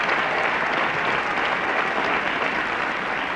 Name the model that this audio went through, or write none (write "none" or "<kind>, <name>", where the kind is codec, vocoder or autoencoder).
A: none